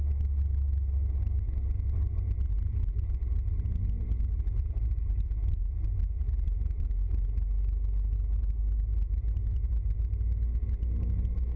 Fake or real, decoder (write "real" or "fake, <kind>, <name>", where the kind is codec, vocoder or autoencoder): real